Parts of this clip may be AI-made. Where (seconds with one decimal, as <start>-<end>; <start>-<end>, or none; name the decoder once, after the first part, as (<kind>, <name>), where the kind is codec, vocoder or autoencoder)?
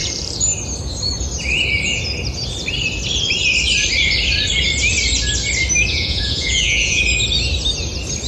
5.9-7.0 (vocoder, Vocos)